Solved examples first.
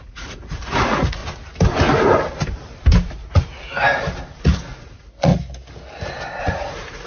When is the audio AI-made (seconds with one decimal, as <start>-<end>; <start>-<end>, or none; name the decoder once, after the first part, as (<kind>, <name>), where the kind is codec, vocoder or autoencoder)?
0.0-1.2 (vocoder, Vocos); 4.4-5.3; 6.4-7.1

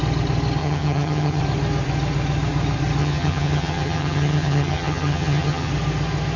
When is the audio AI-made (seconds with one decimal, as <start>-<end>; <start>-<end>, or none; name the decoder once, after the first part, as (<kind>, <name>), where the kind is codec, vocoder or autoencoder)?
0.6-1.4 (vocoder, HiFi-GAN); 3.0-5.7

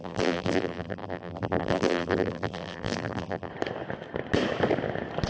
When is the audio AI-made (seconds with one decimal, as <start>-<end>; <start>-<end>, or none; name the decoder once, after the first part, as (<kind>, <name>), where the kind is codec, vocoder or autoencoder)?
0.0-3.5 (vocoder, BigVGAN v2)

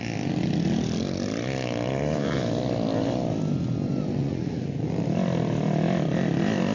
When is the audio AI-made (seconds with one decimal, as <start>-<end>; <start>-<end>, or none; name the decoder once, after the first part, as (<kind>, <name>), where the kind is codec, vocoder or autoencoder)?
4.2-4.7 (vocoder, Vocos)

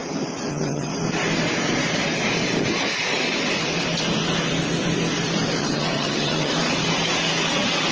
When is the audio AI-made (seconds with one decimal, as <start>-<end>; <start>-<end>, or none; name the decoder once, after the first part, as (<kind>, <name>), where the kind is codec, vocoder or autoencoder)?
0.5-0.9 (vocoder, HiFi-GAN); 5.6-6.5